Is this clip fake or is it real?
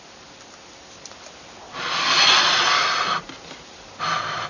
real